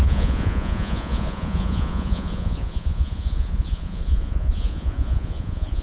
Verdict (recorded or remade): remade